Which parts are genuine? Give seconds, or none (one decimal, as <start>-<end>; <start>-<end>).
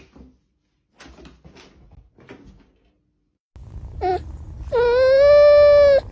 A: 0.0-6.1